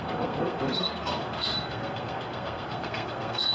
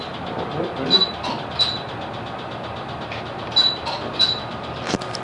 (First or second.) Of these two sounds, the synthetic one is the first